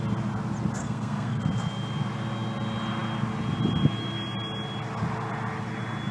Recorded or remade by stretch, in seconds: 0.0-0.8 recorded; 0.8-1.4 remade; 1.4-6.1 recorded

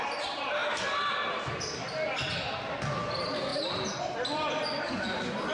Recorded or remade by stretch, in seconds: 0.0-5.5 recorded

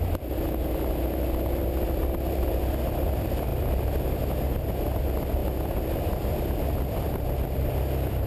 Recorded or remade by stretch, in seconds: 0.0-8.3 recorded

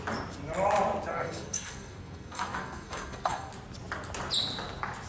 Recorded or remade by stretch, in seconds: 0.0-1.1 recorded; 1.1-3.5 remade; 3.5-5.1 recorded

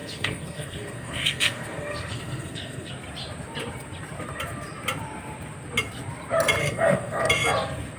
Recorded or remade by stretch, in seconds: 0.0-2.9 remade; 2.9-6.6 recorded; 6.6-7.3 remade; 7.3-8.0 recorded

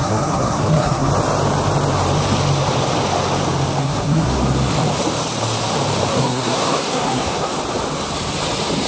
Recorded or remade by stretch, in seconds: 0.0-1.1 remade; 1.1-3.8 recorded; 3.8-4.4 remade; 4.4-6.1 recorded; 6.1-7.5 remade; 7.5-8.9 recorded

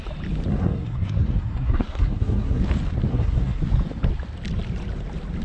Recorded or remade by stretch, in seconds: 0.0-0.5 recorded; 0.5-2.6 remade; 2.6-3.1 recorded; 3.1-3.6 remade; 3.6-5.4 recorded

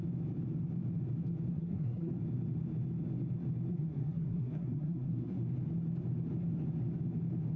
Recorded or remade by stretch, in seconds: 0.0-1.5 recorded; 1.5-2.1 remade; 2.1-3.7 recorded; 3.7-5.4 remade; 5.4-7.6 recorded